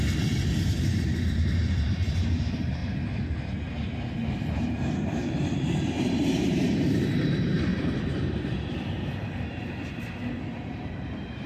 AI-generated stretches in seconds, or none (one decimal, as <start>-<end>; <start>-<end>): 0.0-2.8; 4.3-11.5